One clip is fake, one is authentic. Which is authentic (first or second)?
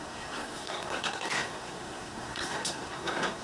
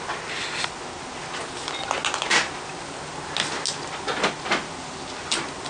second